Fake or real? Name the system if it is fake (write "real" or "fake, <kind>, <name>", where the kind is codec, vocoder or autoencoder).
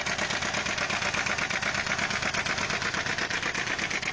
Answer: real